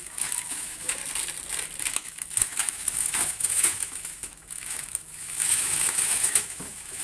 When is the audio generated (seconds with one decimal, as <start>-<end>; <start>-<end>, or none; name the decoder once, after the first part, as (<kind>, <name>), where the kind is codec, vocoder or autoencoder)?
0.0-1.0 (autoencoder, DAC-VAE); 1.8-7.0